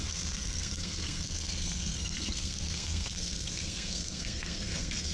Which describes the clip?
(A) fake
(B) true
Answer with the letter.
A